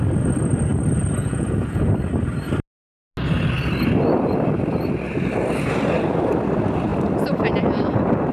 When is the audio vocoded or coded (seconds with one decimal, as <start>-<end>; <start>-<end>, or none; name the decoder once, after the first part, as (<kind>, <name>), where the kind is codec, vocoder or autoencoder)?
1.2-1.9 (vocoder, Vocos)